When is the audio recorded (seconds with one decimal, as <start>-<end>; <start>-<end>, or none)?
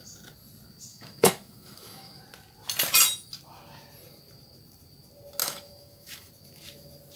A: 0.0-0.9; 2.2-5.4; 6.3-7.2